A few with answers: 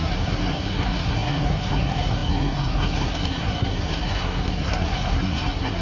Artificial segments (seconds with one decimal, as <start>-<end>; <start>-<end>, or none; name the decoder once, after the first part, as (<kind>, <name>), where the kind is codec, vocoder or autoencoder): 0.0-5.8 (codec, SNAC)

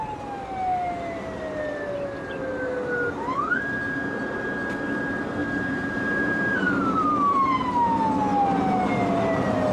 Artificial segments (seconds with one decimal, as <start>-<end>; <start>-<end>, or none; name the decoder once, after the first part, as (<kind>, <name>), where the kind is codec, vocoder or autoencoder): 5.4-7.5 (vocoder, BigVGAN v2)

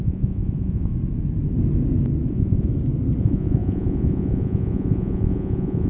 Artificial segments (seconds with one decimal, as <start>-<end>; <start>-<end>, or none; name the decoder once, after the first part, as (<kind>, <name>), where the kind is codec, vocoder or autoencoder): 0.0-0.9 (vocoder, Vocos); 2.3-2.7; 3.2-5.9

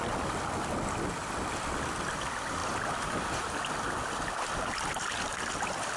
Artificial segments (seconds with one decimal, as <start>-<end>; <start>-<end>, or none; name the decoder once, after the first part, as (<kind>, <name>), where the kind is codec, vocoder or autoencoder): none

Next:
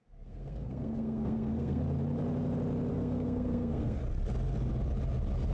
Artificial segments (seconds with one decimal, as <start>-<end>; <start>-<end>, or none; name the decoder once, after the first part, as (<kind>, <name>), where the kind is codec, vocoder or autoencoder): 0.0-1.8 (codec, SNAC); 2.9-4.0

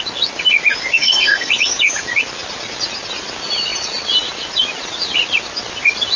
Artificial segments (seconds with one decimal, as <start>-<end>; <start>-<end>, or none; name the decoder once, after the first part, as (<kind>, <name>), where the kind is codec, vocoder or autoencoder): 0.9-1.5 (codec, SNAC)

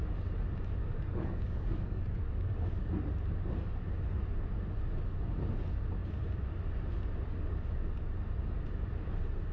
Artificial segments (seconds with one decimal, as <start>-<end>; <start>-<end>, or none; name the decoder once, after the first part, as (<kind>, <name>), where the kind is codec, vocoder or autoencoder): 0.8-2.9 (codec, DAC)